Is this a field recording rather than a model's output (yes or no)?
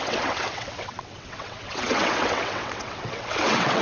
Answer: no